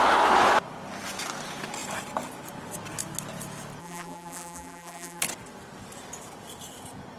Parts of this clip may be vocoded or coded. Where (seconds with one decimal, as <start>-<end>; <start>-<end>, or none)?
3.8-5.2